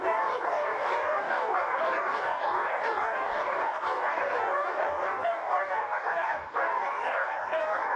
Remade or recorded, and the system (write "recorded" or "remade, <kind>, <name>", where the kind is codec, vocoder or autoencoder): remade, codec, DAC